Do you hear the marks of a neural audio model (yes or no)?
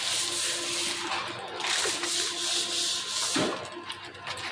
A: no